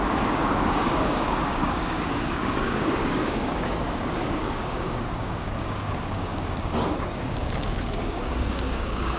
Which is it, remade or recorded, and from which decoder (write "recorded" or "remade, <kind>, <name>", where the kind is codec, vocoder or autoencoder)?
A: remade, codec, DAC